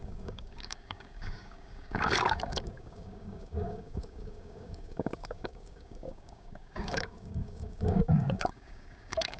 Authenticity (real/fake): fake